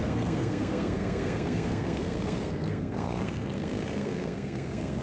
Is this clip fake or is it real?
fake